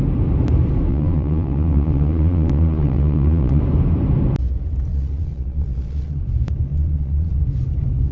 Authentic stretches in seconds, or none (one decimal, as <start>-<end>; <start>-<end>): 0.0-0.9; 3.6-4.9; 6.2-6.7; 7.4-8.1